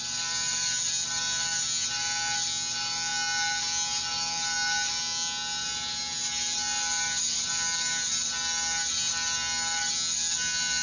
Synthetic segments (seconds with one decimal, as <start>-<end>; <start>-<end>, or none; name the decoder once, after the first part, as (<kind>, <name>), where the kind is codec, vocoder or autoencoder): none